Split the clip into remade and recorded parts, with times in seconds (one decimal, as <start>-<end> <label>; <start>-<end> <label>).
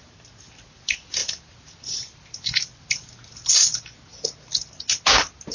0.0-1.2 recorded; 1.2-4.3 remade; 4.3-5.5 recorded